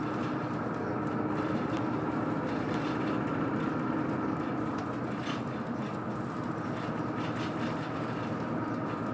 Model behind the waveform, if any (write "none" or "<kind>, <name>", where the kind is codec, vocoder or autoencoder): none